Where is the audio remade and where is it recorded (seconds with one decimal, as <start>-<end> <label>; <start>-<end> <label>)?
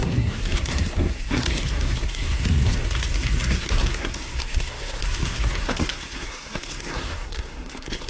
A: 0.0-8.1 remade